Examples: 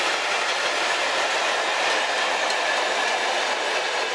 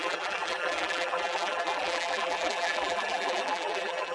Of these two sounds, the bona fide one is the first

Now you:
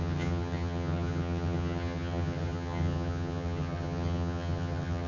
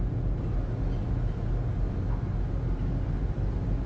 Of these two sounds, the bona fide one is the second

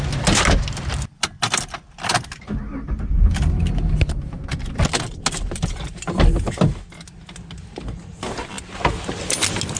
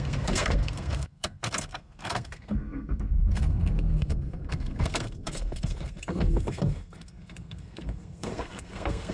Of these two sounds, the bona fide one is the first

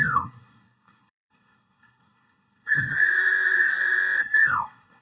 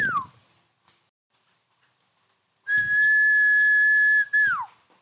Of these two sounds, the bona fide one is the second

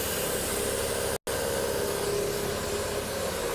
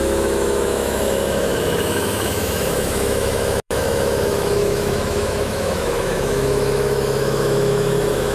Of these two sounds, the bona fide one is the first